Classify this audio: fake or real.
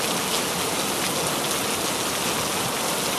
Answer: real